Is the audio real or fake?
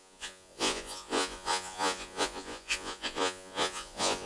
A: fake